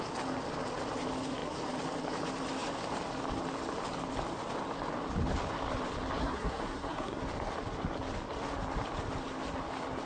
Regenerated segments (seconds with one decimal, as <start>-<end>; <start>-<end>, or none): 6.2-7.2